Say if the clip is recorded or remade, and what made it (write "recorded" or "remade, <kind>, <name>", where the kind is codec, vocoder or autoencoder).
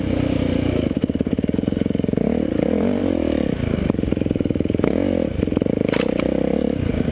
recorded